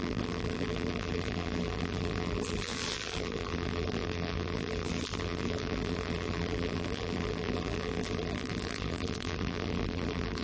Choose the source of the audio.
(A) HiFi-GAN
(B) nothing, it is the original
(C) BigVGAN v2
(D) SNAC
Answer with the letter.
C